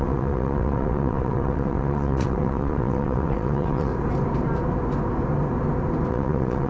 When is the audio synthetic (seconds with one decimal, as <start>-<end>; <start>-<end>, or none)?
0.0-3.9; 6.1-6.7